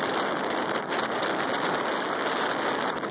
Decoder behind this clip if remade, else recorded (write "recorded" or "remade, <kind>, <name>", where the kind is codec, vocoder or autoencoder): recorded